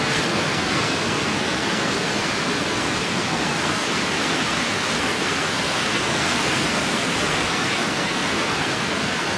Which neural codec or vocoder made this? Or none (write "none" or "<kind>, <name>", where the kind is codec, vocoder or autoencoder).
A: codec, SNAC